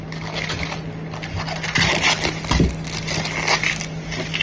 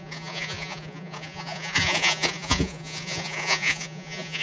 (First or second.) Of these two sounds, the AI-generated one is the second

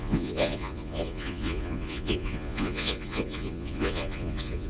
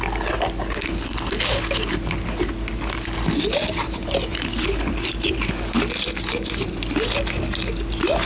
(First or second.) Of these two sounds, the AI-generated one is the first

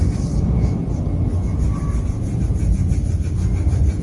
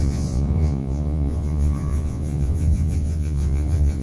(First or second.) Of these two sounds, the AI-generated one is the second